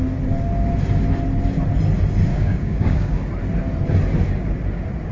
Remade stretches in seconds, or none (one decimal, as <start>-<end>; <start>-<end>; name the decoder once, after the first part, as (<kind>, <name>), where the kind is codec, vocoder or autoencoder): 2.3-3.2 (codec, DAC)